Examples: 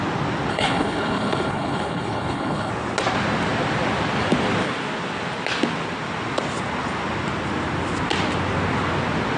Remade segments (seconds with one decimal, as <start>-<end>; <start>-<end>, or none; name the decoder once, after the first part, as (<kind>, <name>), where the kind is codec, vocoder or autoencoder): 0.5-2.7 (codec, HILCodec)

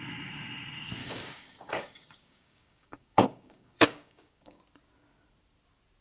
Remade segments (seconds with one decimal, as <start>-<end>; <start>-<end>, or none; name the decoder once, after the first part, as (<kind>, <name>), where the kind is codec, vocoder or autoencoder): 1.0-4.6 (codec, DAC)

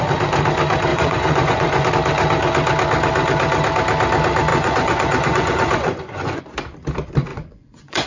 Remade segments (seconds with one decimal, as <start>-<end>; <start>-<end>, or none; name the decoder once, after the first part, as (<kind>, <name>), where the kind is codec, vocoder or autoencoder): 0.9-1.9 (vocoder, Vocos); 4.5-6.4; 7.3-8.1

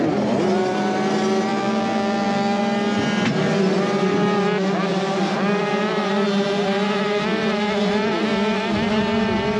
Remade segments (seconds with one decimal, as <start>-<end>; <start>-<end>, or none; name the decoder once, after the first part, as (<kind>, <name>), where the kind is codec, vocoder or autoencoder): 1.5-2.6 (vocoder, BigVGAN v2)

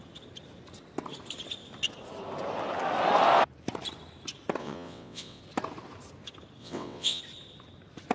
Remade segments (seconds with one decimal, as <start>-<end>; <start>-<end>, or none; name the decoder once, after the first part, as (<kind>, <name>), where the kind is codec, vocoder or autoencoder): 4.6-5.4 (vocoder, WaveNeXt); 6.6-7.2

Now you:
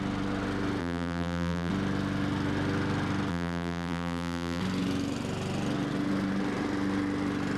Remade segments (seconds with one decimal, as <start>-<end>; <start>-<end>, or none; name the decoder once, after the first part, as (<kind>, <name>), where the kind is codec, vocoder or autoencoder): 0.8-1.7 (vocoder, BigVGAN v2); 3.3-4.6

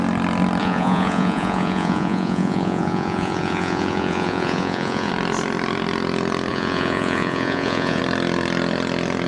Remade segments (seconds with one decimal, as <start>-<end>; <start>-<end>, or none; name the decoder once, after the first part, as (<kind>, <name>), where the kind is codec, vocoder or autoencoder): 0.6-5.1 (vocoder, Vocos); 6.5-8.0